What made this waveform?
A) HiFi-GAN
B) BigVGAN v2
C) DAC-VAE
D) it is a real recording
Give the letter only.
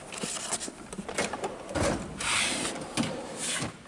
D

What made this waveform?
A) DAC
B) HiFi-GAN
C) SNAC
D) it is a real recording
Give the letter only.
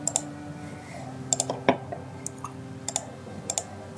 D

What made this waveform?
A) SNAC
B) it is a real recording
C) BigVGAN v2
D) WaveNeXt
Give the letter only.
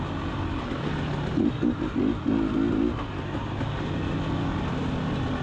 B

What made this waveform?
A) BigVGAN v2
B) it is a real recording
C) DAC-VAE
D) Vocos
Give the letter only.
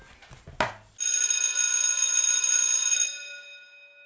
B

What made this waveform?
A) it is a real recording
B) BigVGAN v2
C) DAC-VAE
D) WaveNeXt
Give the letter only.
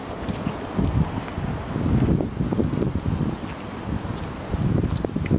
A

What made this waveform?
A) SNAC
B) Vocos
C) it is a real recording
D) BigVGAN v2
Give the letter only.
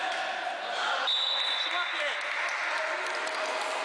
C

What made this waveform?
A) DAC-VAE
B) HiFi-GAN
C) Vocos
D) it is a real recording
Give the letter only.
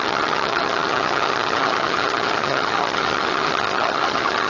B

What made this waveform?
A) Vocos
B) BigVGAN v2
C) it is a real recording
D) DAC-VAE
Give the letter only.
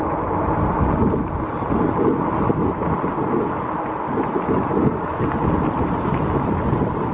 C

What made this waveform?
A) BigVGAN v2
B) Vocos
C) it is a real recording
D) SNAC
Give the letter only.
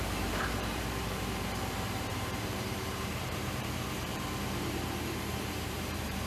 A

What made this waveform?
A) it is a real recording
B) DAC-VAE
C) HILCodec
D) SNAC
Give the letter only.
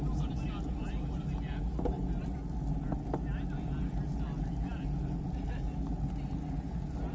A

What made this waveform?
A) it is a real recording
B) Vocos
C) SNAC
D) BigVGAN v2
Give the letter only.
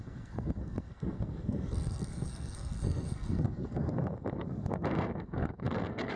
C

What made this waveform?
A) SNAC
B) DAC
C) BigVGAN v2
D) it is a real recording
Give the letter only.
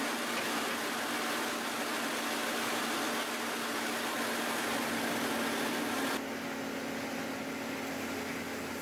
D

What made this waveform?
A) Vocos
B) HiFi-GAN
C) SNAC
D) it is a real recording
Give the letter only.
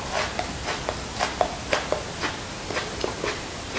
D